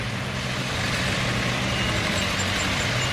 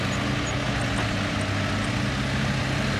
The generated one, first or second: first